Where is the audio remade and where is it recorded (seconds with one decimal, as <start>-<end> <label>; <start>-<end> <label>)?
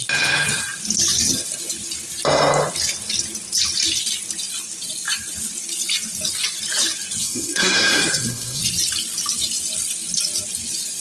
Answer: 0.0-7.2 recorded; 7.2-8.6 remade; 8.6-11.0 recorded